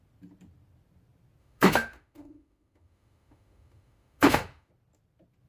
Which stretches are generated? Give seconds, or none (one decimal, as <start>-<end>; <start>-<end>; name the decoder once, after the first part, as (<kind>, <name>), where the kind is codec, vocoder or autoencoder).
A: 1.4-4.7 (autoencoder, DAC-VAE)